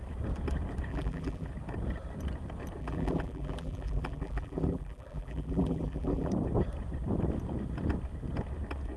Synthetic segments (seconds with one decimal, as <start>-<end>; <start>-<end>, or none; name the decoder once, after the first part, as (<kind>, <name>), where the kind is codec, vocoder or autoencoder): 0.9-1.5 (vocoder, BigVGAN v2); 2.8-6.3